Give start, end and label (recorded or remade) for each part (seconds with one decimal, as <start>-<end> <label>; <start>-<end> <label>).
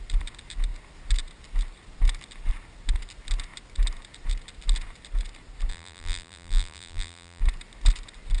0.0-5.7 recorded; 5.7-7.4 remade; 7.4-8.4 recorded